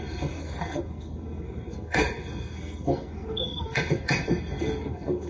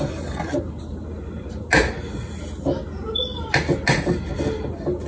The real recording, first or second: second